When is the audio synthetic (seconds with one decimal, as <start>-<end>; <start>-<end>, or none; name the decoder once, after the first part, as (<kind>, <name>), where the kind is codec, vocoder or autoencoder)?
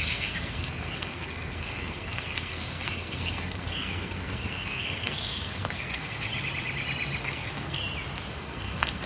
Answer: 0.0-6.3 (codec, SNAC); 7.2-7.8; 8.3-9.1